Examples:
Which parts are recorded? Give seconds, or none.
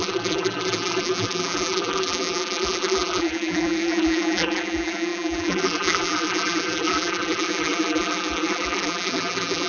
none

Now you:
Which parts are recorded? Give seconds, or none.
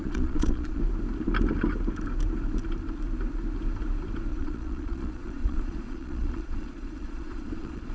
0.8-4.3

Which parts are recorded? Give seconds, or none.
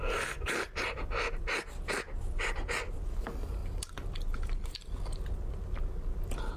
0.0-6.6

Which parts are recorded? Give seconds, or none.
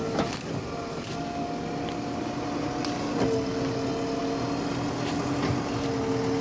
0.0-6.4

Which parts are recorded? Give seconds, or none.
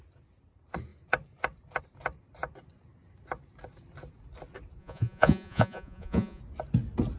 0.0-4.8; 6.4-7.2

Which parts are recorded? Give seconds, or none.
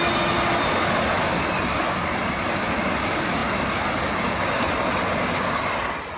0.0-6.2